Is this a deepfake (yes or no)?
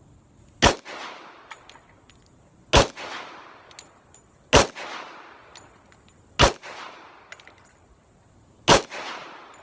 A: no